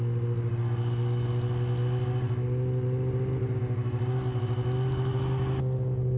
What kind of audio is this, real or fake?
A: real